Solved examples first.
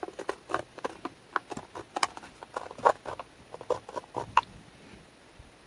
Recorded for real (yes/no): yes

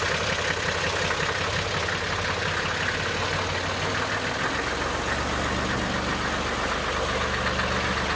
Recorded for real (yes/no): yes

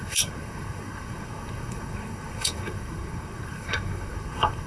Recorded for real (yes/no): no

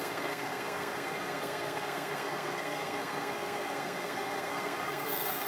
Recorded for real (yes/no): no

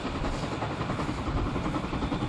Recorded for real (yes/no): yes